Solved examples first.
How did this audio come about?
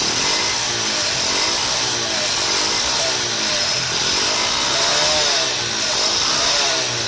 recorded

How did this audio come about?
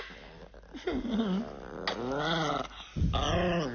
recorded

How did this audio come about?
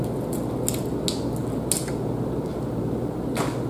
recorded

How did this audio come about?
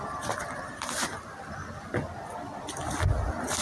recorded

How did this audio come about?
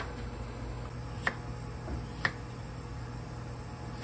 recorded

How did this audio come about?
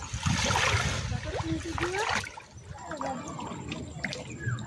recorded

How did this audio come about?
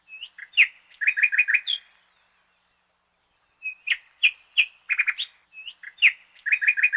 recorded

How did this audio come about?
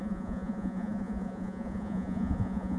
remade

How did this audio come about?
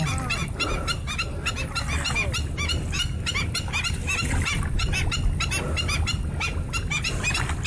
recorded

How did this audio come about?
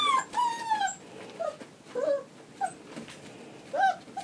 recorded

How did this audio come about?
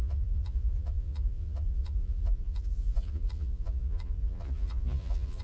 remade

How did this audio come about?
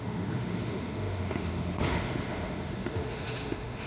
remade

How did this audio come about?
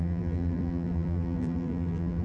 remade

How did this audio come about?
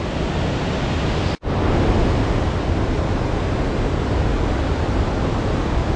recorded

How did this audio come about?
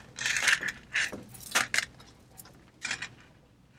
recorded